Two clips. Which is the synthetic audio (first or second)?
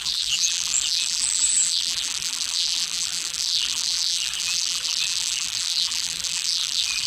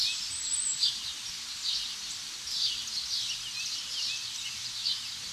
first